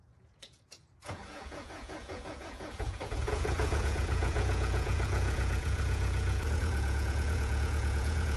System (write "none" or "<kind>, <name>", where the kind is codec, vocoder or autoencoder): vocoder, Vocos